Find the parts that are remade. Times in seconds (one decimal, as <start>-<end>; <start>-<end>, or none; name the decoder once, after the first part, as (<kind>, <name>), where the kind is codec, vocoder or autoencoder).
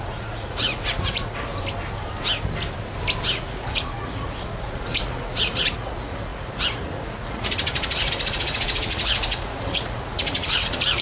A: 0.0-1.5 (vocoder, Vocos); 3.3-11.0